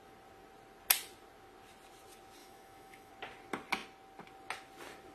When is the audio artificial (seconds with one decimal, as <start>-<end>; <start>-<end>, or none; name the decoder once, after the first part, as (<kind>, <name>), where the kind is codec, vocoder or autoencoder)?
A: 2.4-3.1 (autoencoder, DAC-VAE)